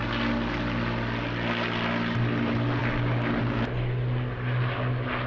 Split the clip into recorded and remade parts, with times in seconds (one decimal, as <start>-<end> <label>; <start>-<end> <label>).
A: 0.0-5.3 recorded